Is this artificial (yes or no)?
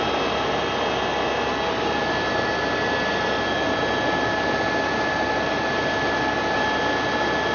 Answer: no